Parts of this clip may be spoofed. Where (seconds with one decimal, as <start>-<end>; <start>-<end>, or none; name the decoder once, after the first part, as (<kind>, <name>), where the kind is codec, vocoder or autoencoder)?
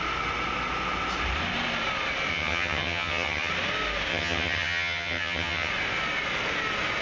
2.3-3.5 (vocoder, HiFi-GAN); 4.1-5.7